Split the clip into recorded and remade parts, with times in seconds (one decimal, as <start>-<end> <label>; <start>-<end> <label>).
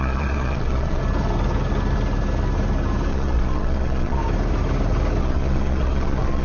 0.0-1.0 remade; 1.0-3.1 recorded; 3.1-4.2 remade; 4.2-5.2 recorded; 5.2-6.4 remade